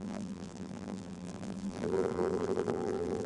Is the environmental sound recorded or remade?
remade